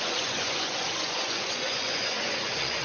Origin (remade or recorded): remade